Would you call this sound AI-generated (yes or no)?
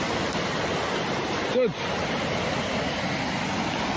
no